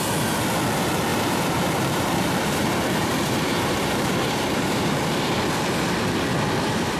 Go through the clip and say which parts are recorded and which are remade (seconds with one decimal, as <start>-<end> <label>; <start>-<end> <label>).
0.0-1.1 recorded; 1.1-5.0 remade; 5.0-7.0 recorded